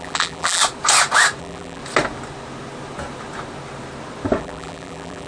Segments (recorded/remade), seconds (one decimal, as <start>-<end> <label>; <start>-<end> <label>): 0.0-0.6 remade; 0.6-1.4 recorded; 1.4-1.8 remade; 1.8-4.4 recorded; 4.4-5.3 remade